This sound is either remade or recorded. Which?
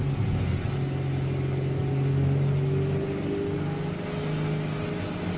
recorded